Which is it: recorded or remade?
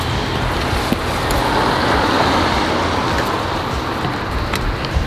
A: recorded